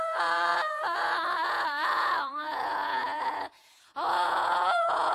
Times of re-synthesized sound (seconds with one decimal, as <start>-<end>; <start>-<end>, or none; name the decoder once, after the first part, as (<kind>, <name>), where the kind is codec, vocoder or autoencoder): 0.0-5.1 (vocoder, Vocos)